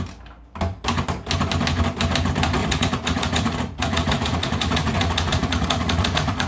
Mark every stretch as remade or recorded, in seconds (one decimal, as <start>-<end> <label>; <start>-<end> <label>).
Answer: 0.0-2.6 recorded; 2.6-6.5 remade